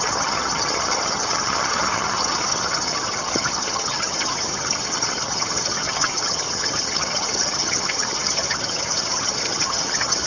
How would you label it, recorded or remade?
remade